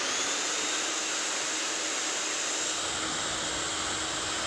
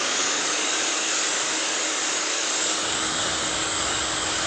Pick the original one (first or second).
first